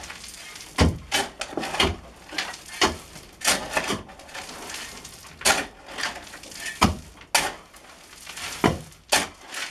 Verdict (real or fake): real